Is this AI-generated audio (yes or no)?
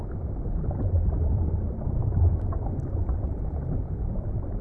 yes